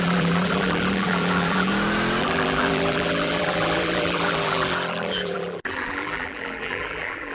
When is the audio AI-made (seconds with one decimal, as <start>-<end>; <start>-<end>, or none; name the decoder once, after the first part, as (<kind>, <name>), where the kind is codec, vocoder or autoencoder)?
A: 0.0-1.7 (vocoder, BigVGAN v2); 2.2-7.3